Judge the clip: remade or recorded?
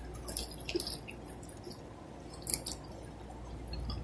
recorded